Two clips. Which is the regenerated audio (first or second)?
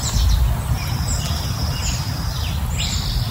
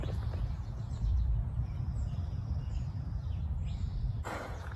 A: second